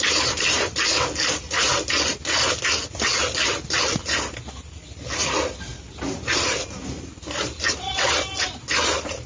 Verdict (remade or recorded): recorded